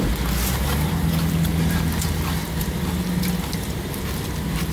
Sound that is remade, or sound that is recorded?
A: recorded